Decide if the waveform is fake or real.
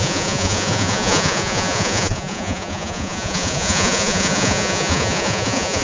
fake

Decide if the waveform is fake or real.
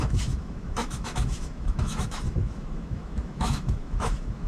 fake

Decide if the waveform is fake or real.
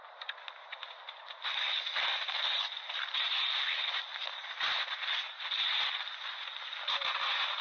real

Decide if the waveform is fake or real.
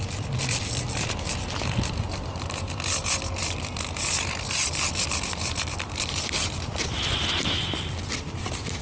real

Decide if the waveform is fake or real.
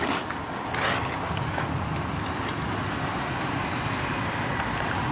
real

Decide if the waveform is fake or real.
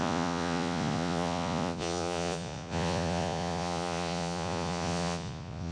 fake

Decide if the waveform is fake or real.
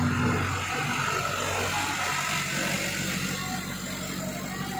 real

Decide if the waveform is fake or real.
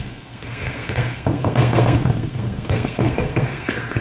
fake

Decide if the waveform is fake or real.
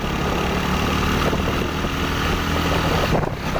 real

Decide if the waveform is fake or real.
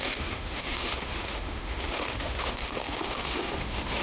fake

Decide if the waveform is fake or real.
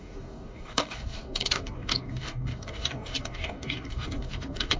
fake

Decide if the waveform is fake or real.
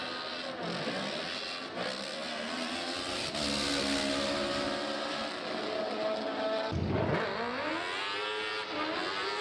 real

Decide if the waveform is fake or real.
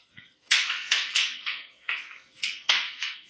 fake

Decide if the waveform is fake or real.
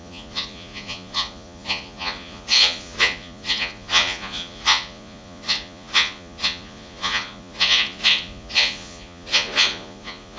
fake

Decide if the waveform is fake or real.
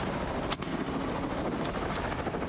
real